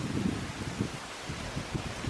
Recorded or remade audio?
recorded